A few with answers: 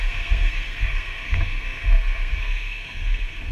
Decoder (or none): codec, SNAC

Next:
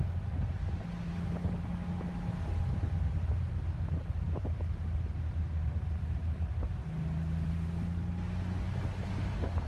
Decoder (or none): none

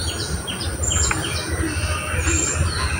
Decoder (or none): none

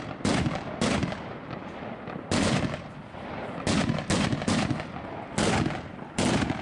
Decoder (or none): none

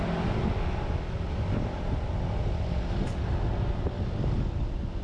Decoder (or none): none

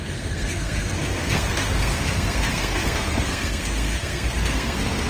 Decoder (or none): codec, SNAC